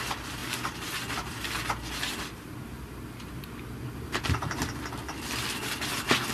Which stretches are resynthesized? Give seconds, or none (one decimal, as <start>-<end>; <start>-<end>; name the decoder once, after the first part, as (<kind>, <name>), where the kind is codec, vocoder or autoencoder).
none